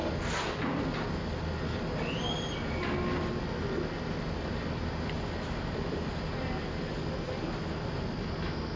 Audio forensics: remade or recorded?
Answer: recorded